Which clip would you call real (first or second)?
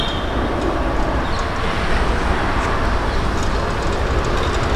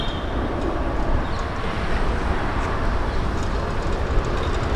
first